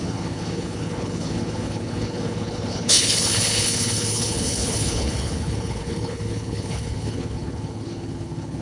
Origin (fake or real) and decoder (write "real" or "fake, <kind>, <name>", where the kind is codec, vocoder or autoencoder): fake, codec, HILCodec